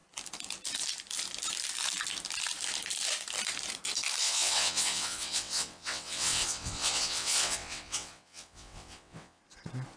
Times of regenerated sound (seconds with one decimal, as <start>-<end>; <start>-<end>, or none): 4.2-9.4